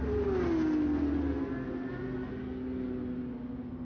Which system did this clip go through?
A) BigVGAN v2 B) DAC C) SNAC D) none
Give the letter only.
D